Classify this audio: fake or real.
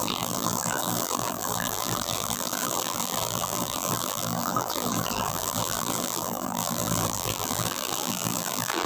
fake